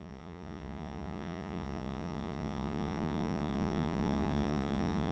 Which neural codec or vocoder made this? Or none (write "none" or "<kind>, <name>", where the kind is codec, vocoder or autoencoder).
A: vocoder, Vocos